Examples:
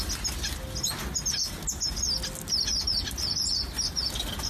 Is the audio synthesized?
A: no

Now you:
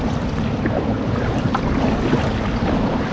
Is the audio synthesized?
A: yes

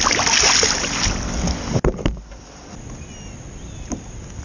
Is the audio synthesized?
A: no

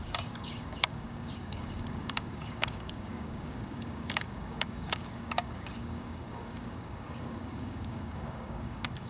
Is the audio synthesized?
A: yes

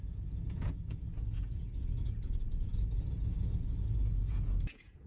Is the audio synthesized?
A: yes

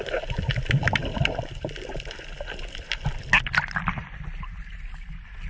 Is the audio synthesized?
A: no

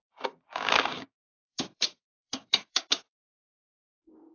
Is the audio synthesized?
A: yes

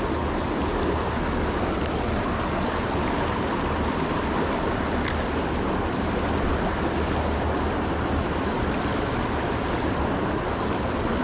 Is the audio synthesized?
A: no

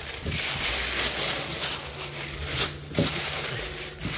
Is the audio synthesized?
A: no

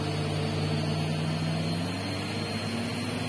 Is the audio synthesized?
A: no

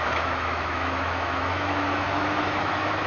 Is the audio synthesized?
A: yes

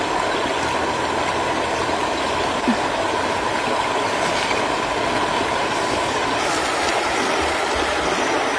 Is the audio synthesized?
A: no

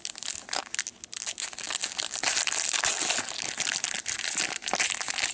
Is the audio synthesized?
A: no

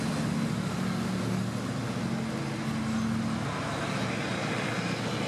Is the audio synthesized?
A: no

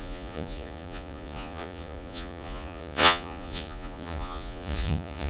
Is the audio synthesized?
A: yes